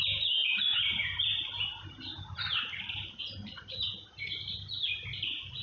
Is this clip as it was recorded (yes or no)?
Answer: yes